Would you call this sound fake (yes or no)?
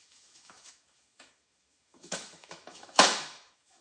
yes